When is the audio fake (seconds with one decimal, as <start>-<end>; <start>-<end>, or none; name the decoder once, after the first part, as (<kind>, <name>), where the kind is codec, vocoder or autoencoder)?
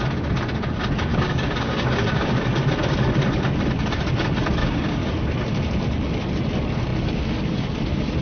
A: 1.1-2.4 (codec, DAC); 4.6-5.1